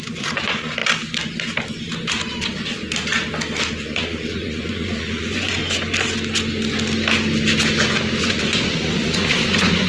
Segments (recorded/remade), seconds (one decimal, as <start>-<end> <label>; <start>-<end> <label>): 0.0-0.8 remade; 0.8-3.8 recorded; 3.8-5.6 remade; 5.6-8.2 recorded; 8.2-9.9 remade